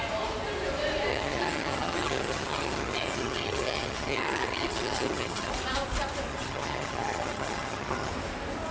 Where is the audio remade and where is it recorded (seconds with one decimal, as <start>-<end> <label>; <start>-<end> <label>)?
0.0-1.1 recorded; 1.1-5.5 remade; 5.5-6.3 recorded; 6.3-8.1 remade; 8.1-8.7 recorded